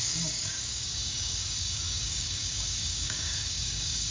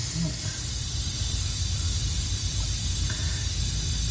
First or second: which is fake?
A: first